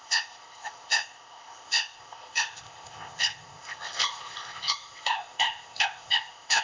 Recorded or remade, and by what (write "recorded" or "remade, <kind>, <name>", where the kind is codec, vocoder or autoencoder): remade, codec, ZipCodec